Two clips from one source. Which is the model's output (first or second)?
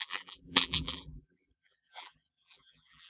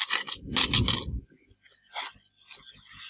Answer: first